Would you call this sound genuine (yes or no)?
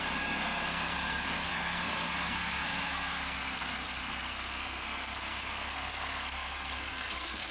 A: no